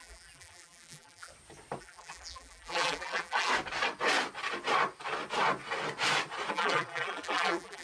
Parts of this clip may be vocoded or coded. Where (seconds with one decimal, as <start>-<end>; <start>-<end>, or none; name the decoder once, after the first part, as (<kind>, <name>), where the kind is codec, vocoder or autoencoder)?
0.0-1.3 (vocoder, BigVGAN v2); 1.8-3.5; 6.5-7.8